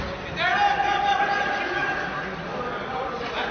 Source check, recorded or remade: recorded